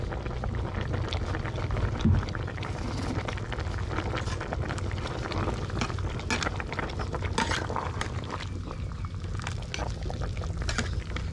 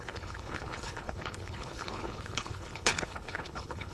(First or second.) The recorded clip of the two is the first